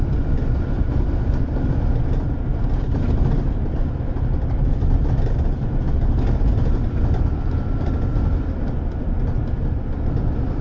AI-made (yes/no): no